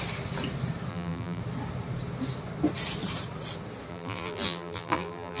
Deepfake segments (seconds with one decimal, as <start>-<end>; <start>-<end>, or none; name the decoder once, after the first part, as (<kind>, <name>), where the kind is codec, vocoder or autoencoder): 0.9-1.4 (vocoder, BigVGAN v2); 3.9-5.4